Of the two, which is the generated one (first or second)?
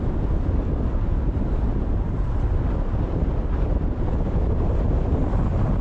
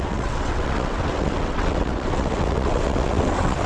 second